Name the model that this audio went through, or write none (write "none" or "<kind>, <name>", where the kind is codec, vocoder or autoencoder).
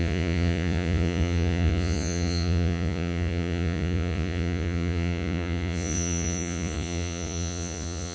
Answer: vocoder, Vocos